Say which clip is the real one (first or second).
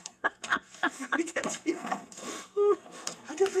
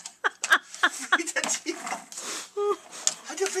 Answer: second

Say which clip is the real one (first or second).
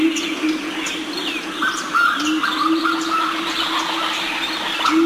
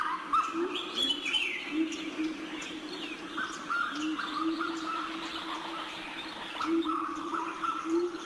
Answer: first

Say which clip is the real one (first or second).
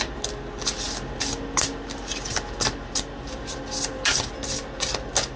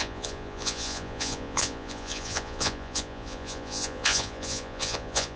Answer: first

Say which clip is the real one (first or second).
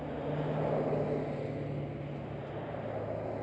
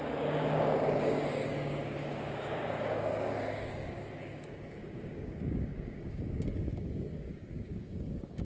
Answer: first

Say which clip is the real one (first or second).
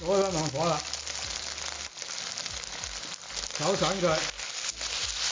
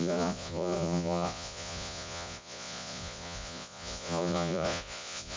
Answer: first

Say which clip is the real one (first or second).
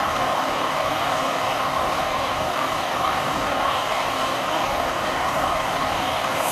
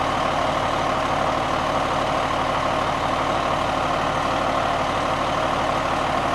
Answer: second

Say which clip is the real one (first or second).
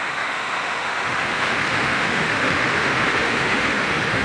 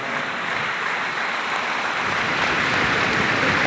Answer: second